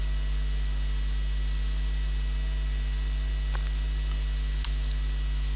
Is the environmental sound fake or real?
real